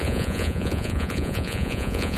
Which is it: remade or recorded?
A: remade